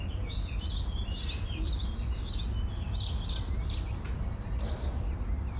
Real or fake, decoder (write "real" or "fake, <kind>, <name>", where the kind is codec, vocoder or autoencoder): fake, vocoder, BigVGAN v2